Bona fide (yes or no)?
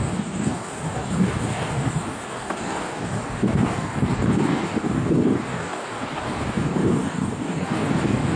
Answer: no